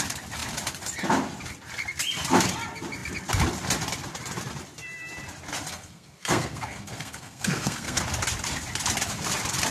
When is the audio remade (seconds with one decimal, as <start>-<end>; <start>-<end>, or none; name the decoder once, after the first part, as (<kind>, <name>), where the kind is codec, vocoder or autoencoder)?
5.7-8.0 (codec, SNAC)